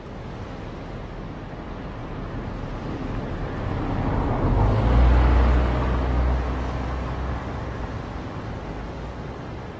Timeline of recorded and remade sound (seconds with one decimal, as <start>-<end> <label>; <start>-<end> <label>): 0.0-2.0 recorded; 2.0-3.7 remade; 3.7-9.8 recorded